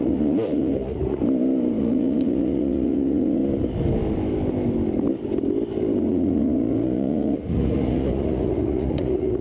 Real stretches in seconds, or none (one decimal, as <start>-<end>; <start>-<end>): 1.2-1.8; 3.4-6.1